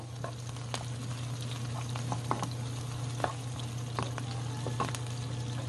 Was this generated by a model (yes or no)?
no